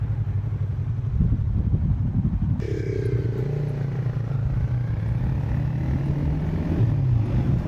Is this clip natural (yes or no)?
yes